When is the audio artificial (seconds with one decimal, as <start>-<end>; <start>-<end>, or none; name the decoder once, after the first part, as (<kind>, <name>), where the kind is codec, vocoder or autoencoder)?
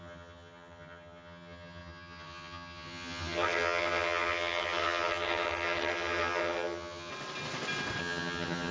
0.0-7.1 (vocoder, HiFi-GAN); 8.0-8.7